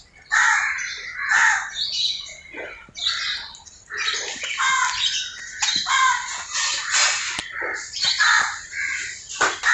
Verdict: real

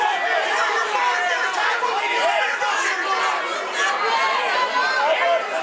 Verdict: real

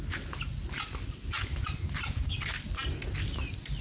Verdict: real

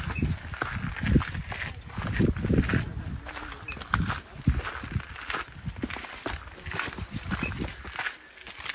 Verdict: real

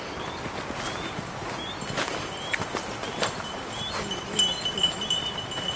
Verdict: real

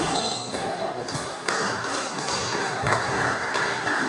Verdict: fake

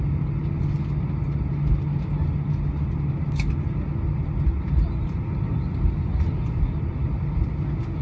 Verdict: real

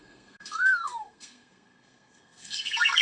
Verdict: fake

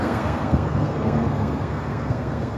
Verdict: fake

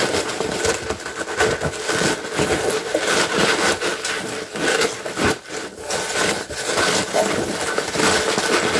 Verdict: real